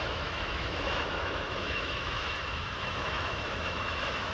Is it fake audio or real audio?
fake